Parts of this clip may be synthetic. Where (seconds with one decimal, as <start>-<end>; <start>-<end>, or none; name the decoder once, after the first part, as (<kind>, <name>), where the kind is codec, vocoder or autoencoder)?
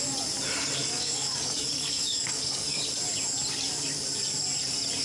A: 0.8-2.8 (codec, DAC)